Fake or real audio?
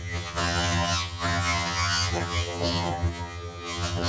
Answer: fake